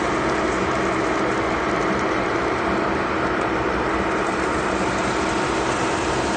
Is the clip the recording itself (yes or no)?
no